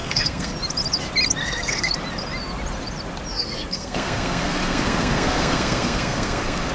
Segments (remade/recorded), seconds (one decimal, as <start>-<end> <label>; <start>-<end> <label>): 0.0-0.5 remade; 0.5-1.4 recorded; 1.4-1.9 remade; 1.9-3.3 recorded; 3.3-6.7 remade